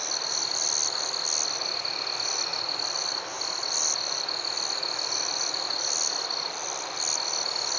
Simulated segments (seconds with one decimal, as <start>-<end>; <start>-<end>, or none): none